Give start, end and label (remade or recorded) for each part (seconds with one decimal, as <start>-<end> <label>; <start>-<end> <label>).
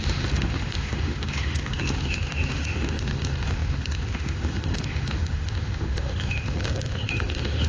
0.0-7.7 remade